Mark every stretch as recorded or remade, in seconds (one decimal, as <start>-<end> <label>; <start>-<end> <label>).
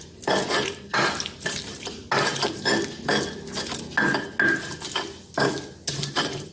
0.0-2.0 remade; 2.0-5.9 recorded; 5.9-6.5 remade